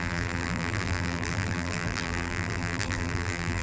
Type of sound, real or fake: fake